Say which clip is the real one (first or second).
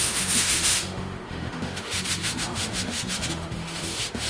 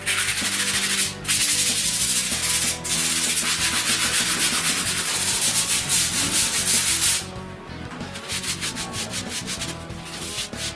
second